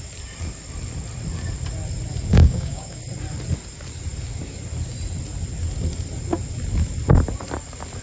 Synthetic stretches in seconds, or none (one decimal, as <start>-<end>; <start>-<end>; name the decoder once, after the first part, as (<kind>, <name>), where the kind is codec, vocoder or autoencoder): 2.3-3.0 (codec, DAC)